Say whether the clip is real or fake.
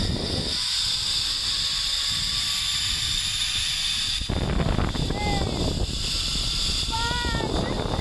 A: real